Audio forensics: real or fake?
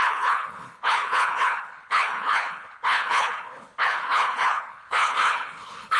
fake